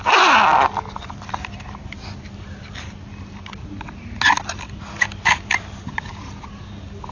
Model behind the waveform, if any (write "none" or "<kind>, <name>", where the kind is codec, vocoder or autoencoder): none